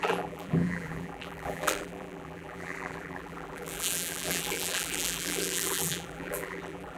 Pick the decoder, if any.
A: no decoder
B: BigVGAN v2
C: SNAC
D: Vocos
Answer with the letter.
B